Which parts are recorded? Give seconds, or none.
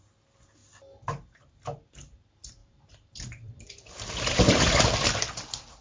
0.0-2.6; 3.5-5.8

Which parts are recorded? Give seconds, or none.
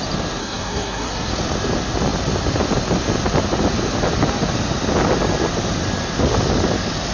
0.0-0.4; 1.3-7.1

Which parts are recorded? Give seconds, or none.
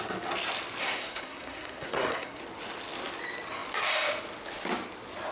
0.0-0.8; 2.4-5.3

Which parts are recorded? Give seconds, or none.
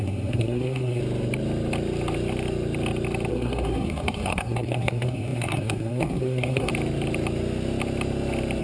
1.0-3.3; 6.7-8.6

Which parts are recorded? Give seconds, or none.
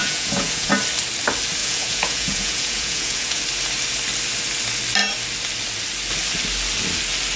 0.7-1.6; 3.4-7.4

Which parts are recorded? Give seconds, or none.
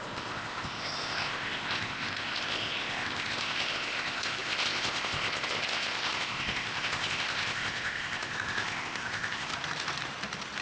9.5-10.6